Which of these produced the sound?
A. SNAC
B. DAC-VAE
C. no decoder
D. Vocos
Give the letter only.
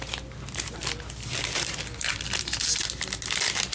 C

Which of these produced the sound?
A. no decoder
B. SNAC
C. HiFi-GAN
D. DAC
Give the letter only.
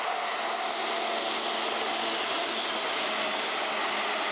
A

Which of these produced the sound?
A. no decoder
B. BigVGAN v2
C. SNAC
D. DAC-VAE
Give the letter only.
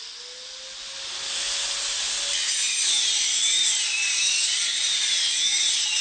A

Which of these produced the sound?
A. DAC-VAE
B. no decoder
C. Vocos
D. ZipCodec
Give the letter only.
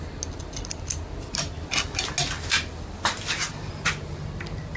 B